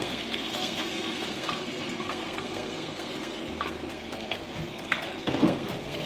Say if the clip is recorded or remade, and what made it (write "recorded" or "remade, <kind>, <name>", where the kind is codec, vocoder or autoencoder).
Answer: remade, codec, SNAC